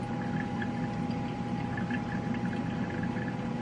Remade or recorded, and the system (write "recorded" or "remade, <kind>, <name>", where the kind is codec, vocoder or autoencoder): recorded